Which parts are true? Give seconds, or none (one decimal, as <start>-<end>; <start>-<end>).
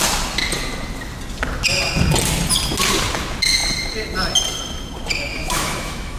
0.0-5.3